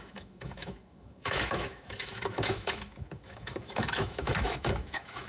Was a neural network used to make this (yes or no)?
yes